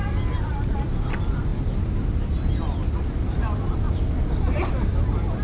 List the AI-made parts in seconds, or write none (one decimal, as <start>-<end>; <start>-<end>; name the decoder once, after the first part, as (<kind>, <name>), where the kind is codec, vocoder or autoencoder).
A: none